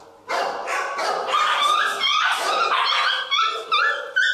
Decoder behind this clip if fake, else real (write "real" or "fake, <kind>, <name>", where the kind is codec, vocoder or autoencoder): real